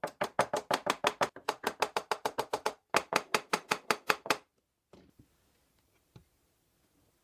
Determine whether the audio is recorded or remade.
recorded